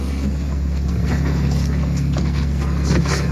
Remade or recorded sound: remade